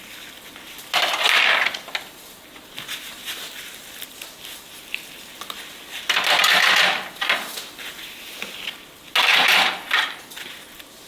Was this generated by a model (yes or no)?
no